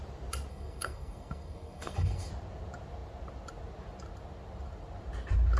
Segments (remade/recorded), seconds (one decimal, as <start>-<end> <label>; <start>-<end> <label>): 0.0-0.5 recorded; 0.5-2.3 remade; 2.3-5.6 recorded